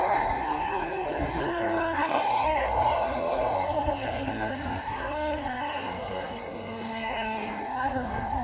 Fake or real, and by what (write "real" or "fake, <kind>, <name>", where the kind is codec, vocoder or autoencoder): fake, codec, SNAC